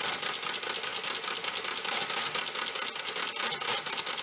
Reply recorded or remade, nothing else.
recorded